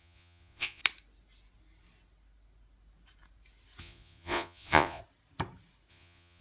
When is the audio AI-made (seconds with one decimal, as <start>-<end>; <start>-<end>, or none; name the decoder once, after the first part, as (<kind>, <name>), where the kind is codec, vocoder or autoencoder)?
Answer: 0.0-0.8 (vocoder, Vocos); 3.8-5.0; 5.9-6.4

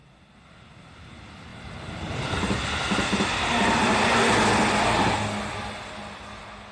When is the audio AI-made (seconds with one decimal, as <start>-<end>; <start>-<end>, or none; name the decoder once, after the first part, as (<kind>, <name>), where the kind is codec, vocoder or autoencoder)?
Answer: none

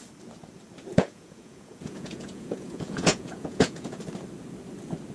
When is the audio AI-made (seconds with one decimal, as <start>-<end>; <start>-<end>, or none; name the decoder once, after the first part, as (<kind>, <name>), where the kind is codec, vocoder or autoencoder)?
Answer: 0.9-4.0 (vocoder, Vocos)

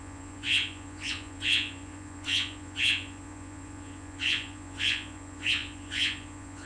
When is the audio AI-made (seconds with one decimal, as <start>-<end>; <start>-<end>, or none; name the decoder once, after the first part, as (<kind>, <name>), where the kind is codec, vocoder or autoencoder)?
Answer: 0.0-6.7 (vocoder, Vocos)

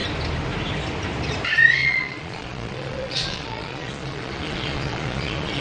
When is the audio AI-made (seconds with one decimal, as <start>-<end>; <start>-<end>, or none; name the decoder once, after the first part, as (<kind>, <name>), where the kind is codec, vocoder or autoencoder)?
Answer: 1.8-5.6 (vocoder, Vocos)

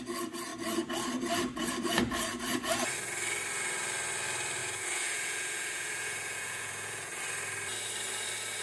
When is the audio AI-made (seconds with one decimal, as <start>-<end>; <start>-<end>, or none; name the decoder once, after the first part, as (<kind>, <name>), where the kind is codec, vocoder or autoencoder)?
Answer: 4.6-7.2 (vocoder, Vocos)

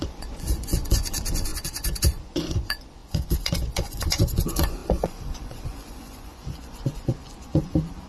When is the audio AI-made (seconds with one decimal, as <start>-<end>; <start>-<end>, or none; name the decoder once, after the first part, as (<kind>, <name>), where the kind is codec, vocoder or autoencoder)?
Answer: 0.0-8.1 (vocoder, Vocos)

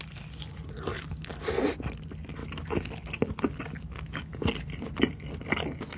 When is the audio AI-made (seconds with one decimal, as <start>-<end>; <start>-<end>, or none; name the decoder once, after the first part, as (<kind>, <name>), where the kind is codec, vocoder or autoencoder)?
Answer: none